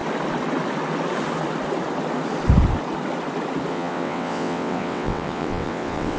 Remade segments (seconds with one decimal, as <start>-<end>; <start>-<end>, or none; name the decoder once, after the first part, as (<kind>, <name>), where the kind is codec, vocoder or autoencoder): 3.7-6.2 (vocoder, WaveNeXt)